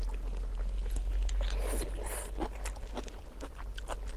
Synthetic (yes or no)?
no